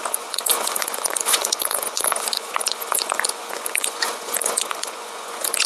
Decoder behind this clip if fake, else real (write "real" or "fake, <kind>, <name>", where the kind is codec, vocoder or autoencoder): fake, vocoder, Vocos